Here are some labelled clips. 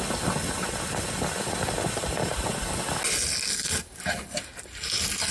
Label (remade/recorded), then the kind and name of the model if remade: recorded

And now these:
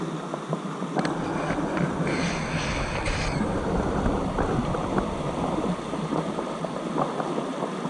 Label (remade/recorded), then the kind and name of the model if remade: recorded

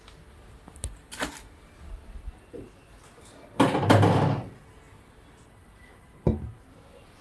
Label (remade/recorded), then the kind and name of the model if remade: recorded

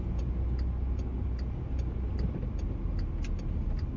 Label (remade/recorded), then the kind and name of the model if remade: recorded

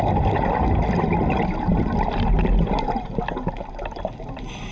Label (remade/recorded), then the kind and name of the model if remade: recorded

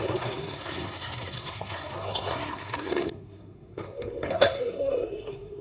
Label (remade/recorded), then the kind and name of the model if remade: remade, codec, SNAC